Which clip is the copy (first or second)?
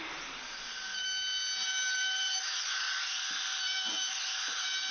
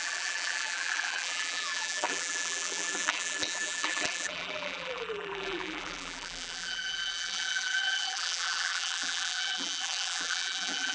second